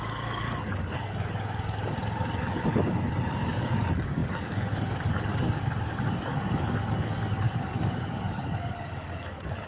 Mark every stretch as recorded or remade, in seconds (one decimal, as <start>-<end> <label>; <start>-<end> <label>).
0.0-9.7 remade